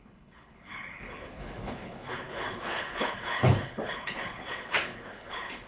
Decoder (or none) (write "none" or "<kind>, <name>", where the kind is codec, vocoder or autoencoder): codec, HILCodec